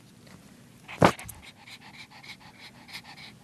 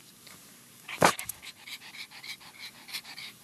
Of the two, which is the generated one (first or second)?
second